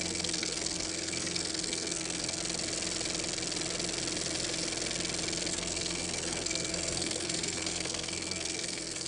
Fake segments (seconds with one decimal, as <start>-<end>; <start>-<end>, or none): 0.0-2.4; 5.5-9.1